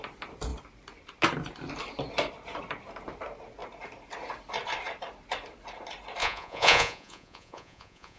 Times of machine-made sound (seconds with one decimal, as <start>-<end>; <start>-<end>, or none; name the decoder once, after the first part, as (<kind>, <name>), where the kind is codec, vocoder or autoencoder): 6.2-8.2 (vocoder, Vocos)